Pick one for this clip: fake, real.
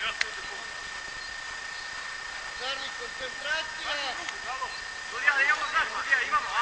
real